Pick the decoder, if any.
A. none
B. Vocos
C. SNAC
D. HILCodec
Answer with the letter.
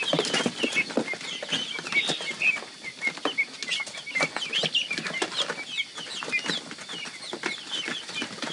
A